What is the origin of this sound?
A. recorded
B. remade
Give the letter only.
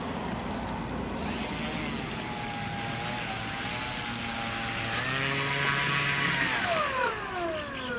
A